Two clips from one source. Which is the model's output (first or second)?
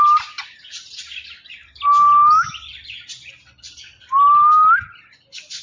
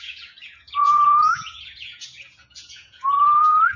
second